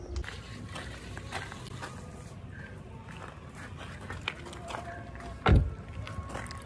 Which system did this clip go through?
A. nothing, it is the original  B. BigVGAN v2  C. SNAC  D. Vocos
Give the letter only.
A